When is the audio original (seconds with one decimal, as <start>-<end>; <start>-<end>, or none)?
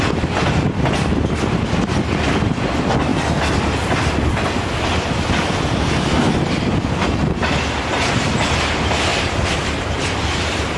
0.0-9.1; 10.4-10.8